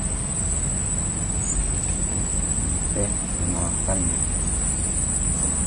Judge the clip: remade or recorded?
recorded